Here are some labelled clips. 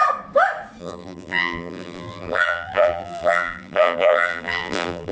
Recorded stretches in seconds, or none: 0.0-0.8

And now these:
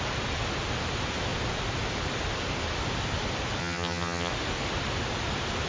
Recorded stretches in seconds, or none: 0.0-3.6; 4.3-5.7

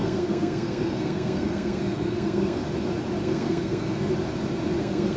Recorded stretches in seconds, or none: 2.6-3.2; 4.1-4.8

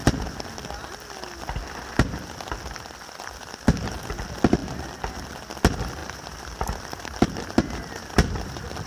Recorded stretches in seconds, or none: 0.0-4.6; 5.1-6.0